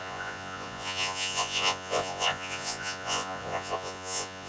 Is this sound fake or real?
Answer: fake